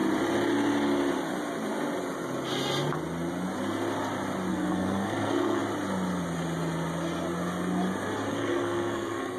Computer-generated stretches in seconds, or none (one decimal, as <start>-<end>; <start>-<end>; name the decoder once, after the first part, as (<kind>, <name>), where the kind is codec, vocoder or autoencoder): 4.5-5.6 (codec, SNAC); 8.3-9.4